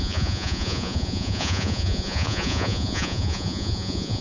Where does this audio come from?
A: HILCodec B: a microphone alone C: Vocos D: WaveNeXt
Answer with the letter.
C